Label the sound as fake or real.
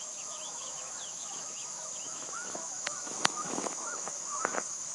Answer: fake